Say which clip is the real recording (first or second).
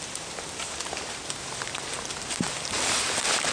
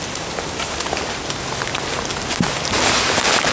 second